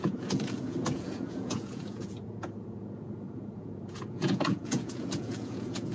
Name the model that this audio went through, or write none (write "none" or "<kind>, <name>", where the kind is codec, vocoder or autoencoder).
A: vocoder, Vocos